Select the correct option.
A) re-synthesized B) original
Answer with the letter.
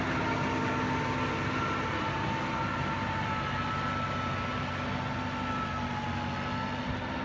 B